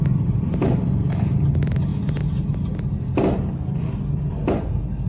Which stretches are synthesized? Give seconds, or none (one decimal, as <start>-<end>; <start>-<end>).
none

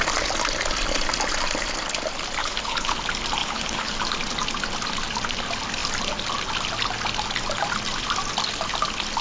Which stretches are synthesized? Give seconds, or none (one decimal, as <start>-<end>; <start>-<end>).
2.4-3.0; 3.4-3.9

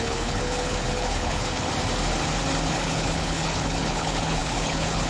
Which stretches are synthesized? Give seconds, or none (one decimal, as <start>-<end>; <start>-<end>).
0.0-1.7; 2.7-5.1

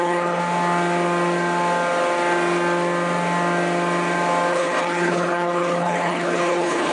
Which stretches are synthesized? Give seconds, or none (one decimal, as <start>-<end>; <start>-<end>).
0.0-0.4; 4.5-6.9

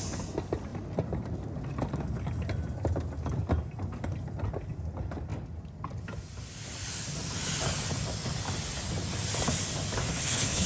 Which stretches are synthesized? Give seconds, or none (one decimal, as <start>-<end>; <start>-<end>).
10.1-10.7

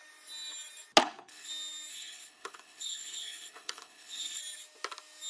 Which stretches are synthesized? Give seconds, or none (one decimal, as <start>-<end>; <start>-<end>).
1.0-1.5; 1.9-4.4